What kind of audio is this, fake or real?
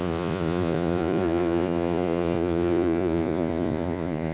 fake